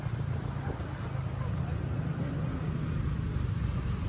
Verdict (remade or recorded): recorded